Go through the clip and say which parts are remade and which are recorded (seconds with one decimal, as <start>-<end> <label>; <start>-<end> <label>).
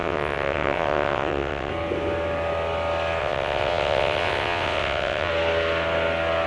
0.0-1.7 remade; 1.7-3.2 recorded; 3.2-5.3 remade; 5.3-6.5 recorded